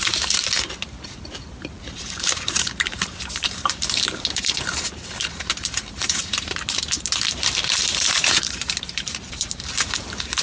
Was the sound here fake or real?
fake